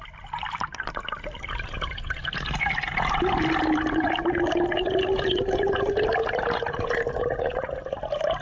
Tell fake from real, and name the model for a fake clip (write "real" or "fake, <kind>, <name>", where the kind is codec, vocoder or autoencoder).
real